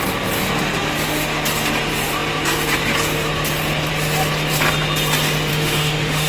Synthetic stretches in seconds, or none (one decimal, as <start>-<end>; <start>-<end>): 5.5-6.3